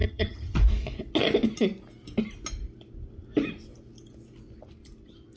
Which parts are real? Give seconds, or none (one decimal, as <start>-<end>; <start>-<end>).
0.6-5.4